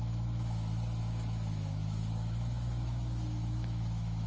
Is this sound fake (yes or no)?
yes